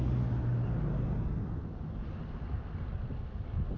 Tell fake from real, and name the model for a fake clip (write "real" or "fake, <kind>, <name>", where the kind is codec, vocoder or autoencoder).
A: real